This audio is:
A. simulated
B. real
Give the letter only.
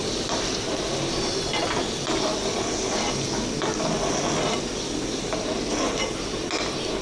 B